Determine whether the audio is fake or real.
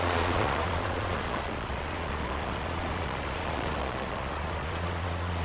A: fake